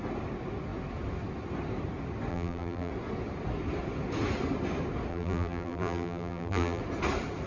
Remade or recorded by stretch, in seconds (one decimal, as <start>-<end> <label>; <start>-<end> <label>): 0.0-2.3 recorded; 2.3-2.9 remade; 2.9-5.1 recorded; 5.1-6.8 remade; 6.8-7.5 recorded